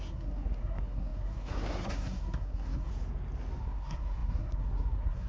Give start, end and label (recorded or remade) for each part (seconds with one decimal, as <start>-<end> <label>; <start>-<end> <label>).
0.0-2.9 remade; 2.9-3.6 recorded; 3.6-5.3 remade